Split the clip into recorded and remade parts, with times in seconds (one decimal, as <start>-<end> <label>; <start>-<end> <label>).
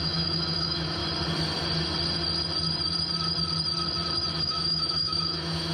0.0-1.0 remade; 1.0-4.4 recorded; 4.4-5.7 remade